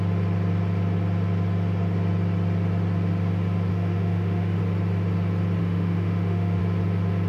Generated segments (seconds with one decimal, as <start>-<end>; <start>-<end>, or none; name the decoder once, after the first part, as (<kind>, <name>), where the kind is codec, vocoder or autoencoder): 3.7-4.6 (autoencoder, DAC-VAE); 5.6-6.6